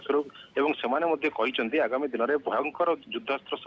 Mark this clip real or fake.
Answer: real